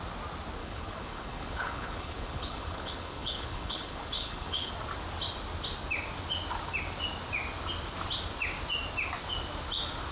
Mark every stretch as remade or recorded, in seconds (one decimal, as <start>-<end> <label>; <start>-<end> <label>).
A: 0.0-0.6 recorded; 0.6-4.7 remade; 4.7-10.1 recorded